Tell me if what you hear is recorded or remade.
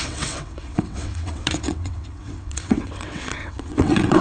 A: remade